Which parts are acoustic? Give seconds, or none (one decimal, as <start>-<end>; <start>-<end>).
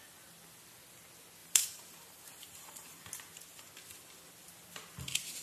0.0-1.4; 3.1-5.4